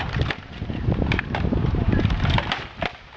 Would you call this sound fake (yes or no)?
yes